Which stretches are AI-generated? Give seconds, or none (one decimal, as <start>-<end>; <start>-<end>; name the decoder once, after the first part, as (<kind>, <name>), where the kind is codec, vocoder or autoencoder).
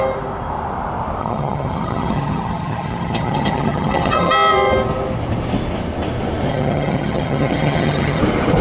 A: 1.2-4.3 (vocoder, HiFi-GAN); 6.5-8.2